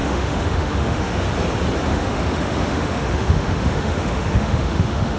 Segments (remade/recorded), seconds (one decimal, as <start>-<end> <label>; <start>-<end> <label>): 0.0-1.2 remade; 1.2-1.9 recorded; 1.9-5.2 remade